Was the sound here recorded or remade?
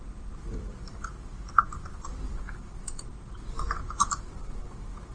remade